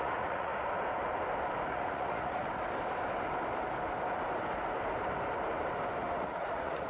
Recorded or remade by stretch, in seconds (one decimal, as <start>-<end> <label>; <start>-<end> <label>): 0.0-0.5 remade; 0.5-1.7 recorded; 1.7-2.4 remade; 2.4-6.2 recorded; 6.2-6.9 remade